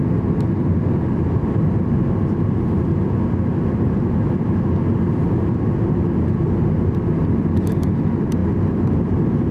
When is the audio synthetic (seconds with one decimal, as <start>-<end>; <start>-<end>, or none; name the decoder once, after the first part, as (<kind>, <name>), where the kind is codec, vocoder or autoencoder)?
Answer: none